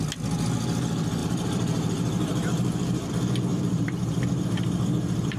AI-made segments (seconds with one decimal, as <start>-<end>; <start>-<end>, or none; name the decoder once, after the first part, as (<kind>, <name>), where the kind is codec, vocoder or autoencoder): 1.2-3.1 (vocoder, BigVGAN v2); 3.5-5.4